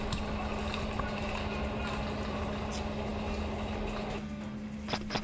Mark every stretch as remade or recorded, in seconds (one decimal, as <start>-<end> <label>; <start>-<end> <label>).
0.0-5.2 recorded